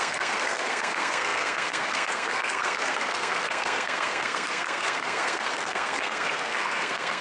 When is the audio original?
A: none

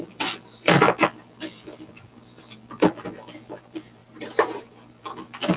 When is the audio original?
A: 4.0-4.6